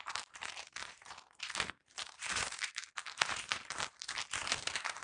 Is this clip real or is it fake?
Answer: fake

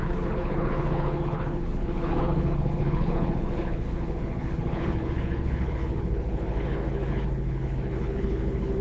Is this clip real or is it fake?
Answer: fake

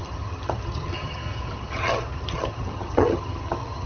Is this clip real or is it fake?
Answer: fake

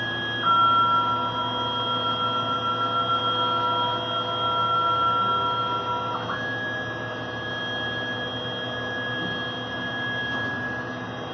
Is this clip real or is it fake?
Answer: real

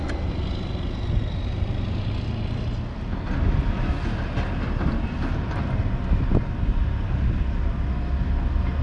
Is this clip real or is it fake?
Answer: real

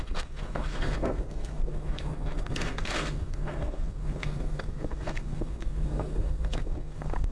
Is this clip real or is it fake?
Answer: fake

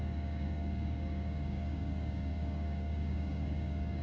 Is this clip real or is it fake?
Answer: fake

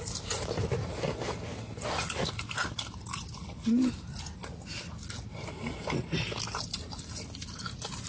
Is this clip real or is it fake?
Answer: real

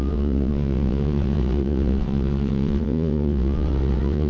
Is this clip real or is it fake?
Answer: fake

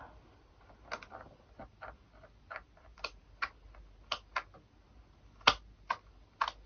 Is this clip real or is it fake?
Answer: real